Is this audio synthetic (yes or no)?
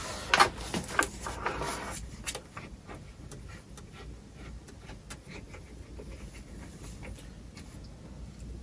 no